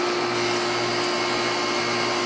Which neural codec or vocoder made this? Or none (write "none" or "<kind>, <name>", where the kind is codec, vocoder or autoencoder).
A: none